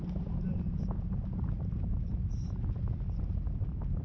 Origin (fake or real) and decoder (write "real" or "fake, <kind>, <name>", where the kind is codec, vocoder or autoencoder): real